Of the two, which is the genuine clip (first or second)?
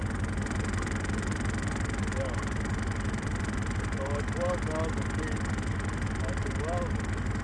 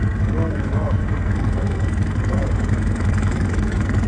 first